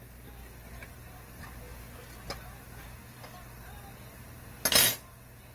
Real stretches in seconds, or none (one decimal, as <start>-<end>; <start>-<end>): 0.0-5.5